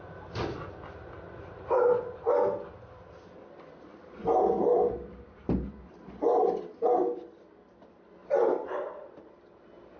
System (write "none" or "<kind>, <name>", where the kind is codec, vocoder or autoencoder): none